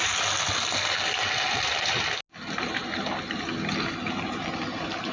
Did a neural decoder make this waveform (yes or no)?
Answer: no